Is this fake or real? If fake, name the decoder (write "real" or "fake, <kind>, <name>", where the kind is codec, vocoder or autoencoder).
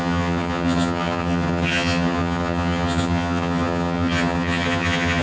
fake, vocoder, HiFi-GAN